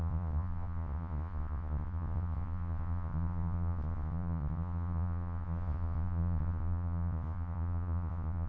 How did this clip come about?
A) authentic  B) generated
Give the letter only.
B